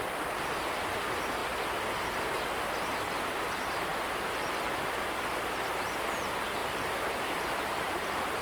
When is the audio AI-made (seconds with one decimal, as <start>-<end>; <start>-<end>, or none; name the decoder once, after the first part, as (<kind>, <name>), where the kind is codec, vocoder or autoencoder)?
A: 6.6-8.4 (vocoder, BigVGAN v2)